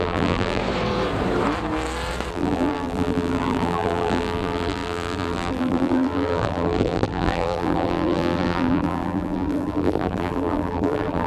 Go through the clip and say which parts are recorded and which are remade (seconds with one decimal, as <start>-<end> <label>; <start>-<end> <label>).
0.0-0.6 remade; 0.6-2.3 recorded; 2.3-11.3 remade

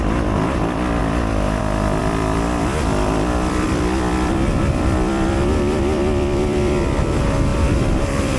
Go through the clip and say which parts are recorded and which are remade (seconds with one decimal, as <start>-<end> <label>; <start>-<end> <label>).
0.0-1.0 recorded; 1.0-1.6 remade; 1.6-2.0 recorded; 2.0-7.0 remade; 7.0-7.5 recorded; 7.5-8.4 remade

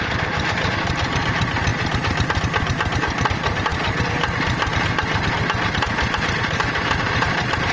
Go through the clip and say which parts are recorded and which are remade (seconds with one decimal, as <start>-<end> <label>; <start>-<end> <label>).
0.0-7.7 recorded

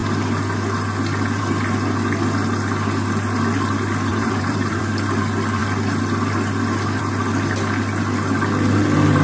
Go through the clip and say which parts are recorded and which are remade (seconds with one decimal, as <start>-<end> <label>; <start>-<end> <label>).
0.0-4.1 recorded; 4.1-4.8 remade; 4.8-9.2 recorded

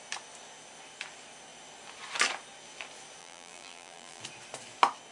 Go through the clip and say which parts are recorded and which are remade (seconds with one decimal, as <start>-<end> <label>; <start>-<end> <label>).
0.0-3.2 recorded; 3.2-4.2 remade; 4.2-5.1 recorded

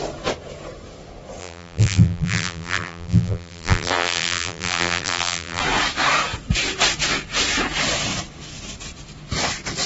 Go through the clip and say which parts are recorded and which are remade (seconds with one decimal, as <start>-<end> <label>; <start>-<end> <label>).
0.0-1.4 recorded; 1.4-5.6 remade; 5.6-9.9 recorded

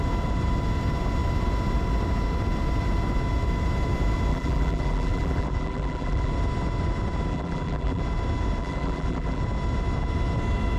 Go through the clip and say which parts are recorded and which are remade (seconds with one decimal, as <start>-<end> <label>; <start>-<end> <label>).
0.0-4.3 recorded; 4.3-6.3 remade; 6.3-7.3 recorded; 7.3-8.0 remade; 8.0-8.6 recorded; 8.6-9.4 remade; 9.4-10.8 recorded

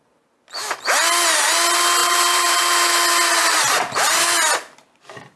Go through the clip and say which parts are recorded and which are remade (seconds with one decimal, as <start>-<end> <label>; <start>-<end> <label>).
0.0-2.0 recorded; 2.0-2.6 remade; 2.6-3.4 recorded; 3.4-4.5 remade; 4.5-5.4 recorded